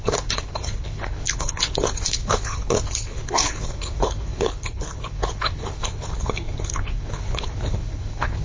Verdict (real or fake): fake